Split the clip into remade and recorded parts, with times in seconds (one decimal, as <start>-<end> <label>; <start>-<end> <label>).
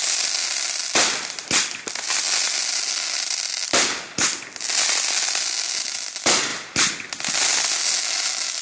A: 0.0-8.6 recorded